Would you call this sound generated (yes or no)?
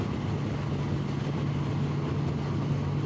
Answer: no